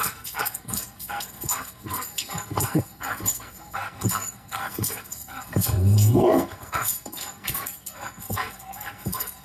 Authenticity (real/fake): fake